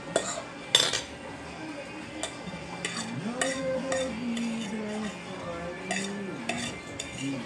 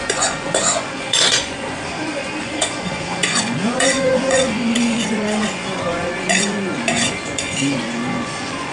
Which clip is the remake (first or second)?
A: second